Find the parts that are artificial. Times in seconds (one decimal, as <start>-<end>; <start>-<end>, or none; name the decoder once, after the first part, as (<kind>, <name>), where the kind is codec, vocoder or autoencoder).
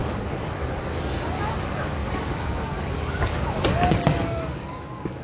0.0-5.2 (codec, DAC)